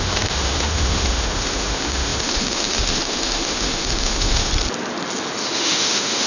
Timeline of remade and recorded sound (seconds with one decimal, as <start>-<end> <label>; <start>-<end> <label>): 0.0-4.5 remade; 4.5-5.4 recorded; 5.4-6.3 remade